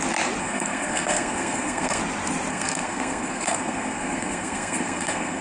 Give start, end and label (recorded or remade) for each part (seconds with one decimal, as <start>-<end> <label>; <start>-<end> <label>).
0.0-0.4 recorded; 0.4-2.0 remade; 2.0-2.5 recorded; 2.5-5.4 remade

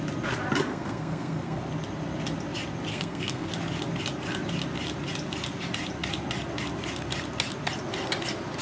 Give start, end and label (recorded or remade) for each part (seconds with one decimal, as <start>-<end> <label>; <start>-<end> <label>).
0.0-0.7 recorded; 0.7-1.6 remade; 1.6-2.9 recorded; 2.9-3.5 remade; 3.5-8.6 recorded